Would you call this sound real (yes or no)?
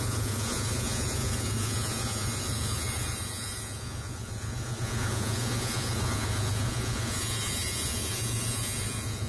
no